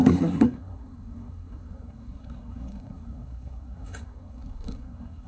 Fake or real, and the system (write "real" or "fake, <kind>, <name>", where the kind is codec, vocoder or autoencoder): fake, codec, SNAC